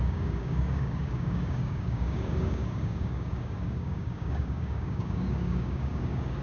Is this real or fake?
fake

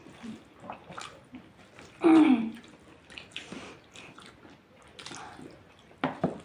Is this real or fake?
real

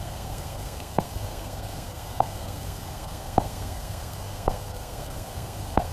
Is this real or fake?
fake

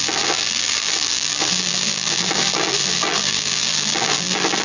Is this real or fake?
fake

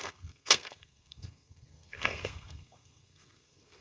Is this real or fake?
fake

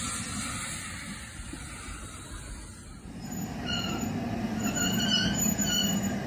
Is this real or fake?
real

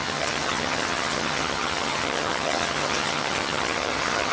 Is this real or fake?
fake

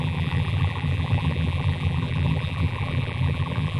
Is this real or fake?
fake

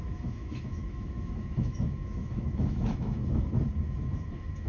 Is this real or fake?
fake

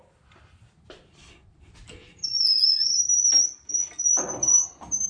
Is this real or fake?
real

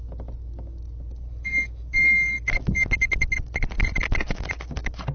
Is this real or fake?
real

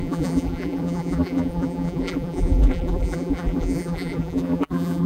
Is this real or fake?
fake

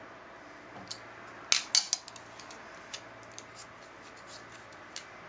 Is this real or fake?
real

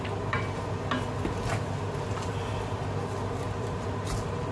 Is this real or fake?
real